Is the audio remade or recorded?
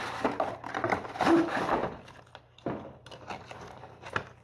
recorded